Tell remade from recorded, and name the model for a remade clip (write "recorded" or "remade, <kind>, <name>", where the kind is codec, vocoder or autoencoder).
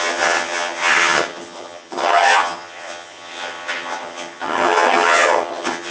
remade, vocoder, HiFi-GAN